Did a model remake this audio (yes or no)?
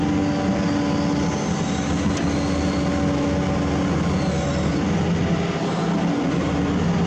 no